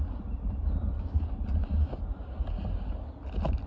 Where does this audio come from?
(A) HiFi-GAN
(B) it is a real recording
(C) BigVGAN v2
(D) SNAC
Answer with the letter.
B